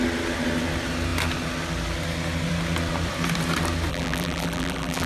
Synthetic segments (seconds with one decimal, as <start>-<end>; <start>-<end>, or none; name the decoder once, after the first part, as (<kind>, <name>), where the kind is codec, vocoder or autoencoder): 3.9-5.1 (vocoder, BigVGAN v2)